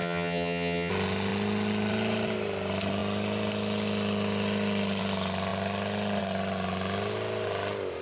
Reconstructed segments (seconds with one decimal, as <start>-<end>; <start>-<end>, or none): 0.0-0.9